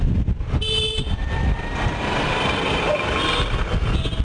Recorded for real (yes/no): yes